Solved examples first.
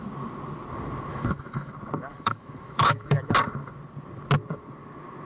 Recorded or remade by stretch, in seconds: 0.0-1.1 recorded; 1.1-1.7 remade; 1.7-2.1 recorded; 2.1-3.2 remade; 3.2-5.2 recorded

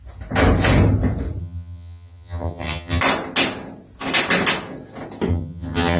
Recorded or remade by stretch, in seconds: 0.0-1.4 recorded; 1.4-3.0 remade; 3.0-5.3 recorded; 5.3-6.0 remade

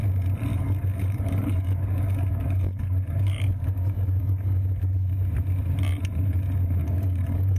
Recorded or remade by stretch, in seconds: 0.0-0.5 recorded; 0.5-5.1 remade; 5.1-6.8 recorded; 6.8-7.6 remade

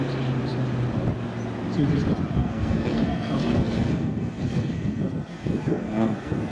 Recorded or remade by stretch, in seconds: 0.0-2.4 recorded; 2.4-6.5 remade

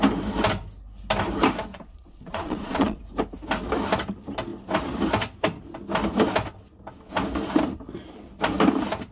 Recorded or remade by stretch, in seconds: 0.0-1.7 recorded; 1.7-3.0 remade; 3.0-9.1 recorded